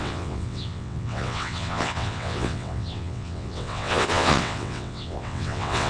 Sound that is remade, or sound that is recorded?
remade